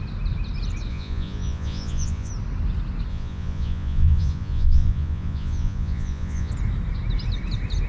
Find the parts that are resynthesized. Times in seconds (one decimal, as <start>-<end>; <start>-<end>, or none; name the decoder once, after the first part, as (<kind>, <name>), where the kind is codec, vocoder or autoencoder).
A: 0.9-2.3 (vocoder, Vocos); 3.1-6.5